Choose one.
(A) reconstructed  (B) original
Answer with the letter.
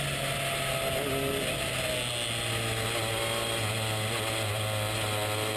B